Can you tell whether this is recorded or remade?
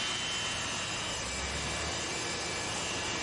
recorded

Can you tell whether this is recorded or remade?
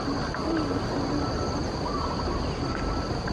recorded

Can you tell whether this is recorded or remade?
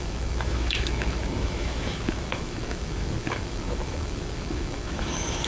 remade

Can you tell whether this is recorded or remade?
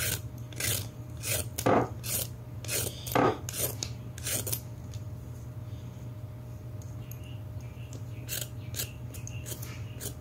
recorded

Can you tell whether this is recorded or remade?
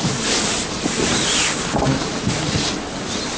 recorded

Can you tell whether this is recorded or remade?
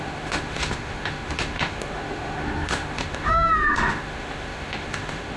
remade